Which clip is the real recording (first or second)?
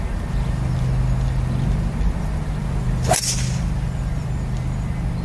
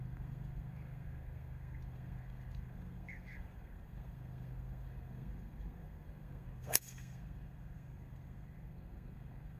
first